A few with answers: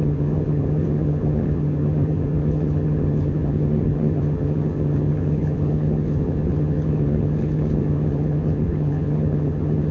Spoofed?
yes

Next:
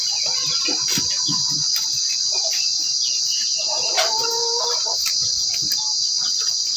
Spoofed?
no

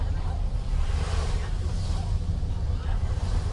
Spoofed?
no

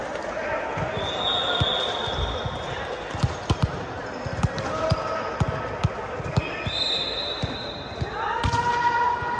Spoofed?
no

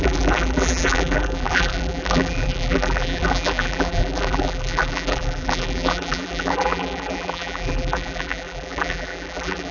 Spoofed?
yes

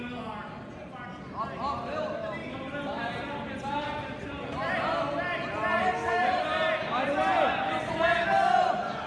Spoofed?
no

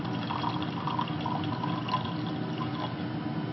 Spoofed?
no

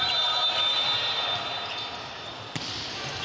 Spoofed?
no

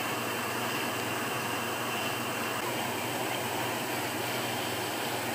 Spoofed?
no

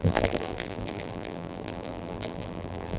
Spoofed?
yes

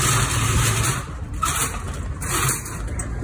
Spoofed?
no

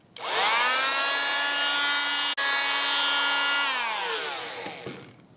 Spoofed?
no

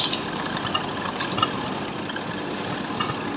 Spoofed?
no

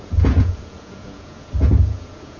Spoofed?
yes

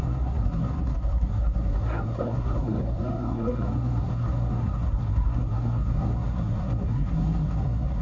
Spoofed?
yes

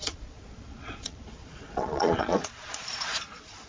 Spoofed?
yes